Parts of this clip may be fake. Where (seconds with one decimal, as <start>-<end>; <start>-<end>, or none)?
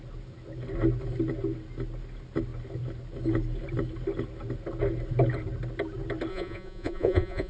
6.3-7.5